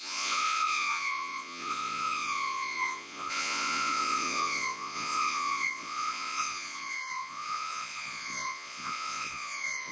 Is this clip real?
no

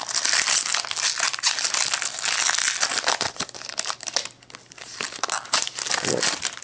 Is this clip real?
yes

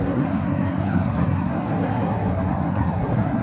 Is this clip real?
no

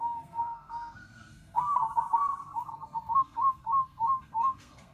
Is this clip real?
no